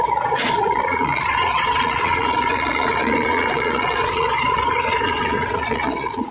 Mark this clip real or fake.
fake